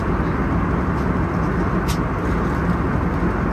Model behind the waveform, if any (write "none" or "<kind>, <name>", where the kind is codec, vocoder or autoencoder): none